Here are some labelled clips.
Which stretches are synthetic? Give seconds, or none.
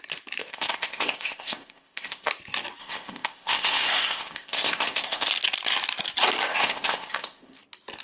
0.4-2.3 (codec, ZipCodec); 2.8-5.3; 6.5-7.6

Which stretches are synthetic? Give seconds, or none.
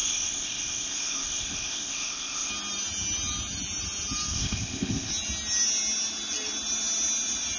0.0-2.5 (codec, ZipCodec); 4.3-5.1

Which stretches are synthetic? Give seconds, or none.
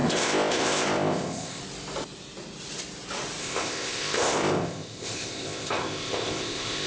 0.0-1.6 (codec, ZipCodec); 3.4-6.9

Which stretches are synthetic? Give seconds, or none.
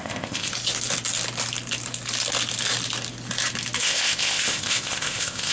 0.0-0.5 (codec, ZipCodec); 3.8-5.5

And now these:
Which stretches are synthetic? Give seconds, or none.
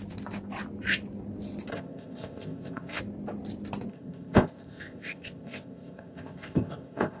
1.7-3.0 (codec, ZipCodec); 3.9-7.2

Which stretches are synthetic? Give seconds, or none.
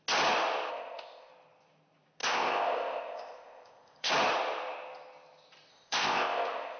0.7-1.3 (codec, ZipCodec); 2.2-4.1; 5.7-6.8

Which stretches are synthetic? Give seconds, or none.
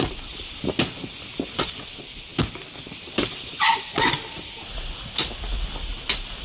none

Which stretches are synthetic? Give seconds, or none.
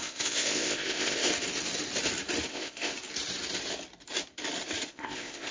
0.0-1.3 (codec, ZipCodec); 2.5-2.9; 4.9-5.5